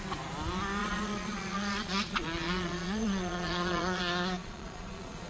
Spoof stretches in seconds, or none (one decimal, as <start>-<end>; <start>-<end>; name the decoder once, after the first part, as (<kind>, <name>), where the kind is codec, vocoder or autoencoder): 0.8-4.0 (vocoder, Vocos); 4.4-5.3